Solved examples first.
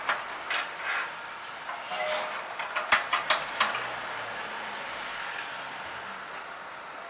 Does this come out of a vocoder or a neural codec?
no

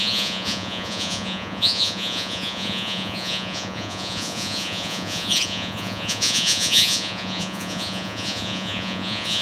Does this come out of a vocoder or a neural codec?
yes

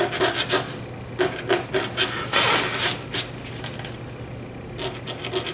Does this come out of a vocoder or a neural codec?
no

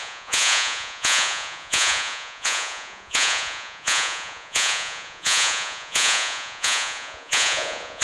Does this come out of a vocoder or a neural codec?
yes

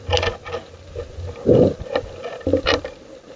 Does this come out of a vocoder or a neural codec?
no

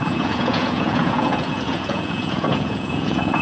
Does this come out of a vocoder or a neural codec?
yes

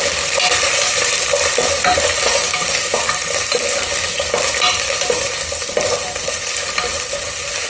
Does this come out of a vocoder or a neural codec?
no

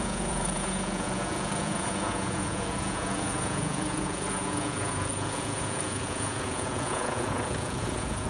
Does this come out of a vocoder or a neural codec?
yes